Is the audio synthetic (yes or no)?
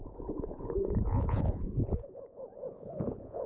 yes